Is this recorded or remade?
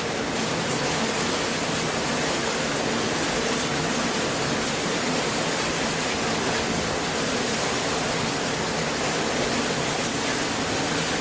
recorded